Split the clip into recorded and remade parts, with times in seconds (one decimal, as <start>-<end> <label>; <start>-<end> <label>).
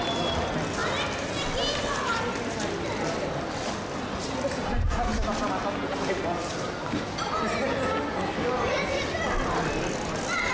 0.0-10.5 recorded